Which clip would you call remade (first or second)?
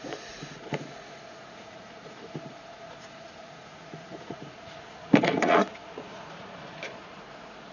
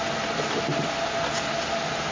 first